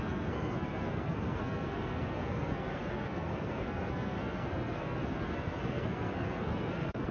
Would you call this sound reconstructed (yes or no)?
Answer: yes